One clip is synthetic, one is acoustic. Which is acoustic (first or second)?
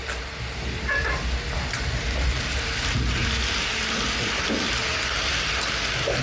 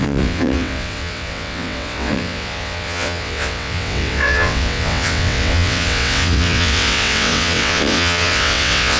first